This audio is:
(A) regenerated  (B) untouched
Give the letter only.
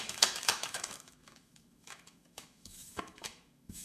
A